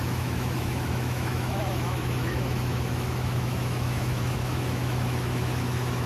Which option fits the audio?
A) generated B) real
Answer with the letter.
A